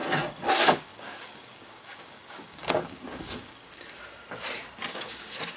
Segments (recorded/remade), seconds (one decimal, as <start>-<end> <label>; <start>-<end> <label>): 0.0-0.5 recorded; 0.5-4.0 remade; 4.0-4.9 recorded; 4.9-5.6 remade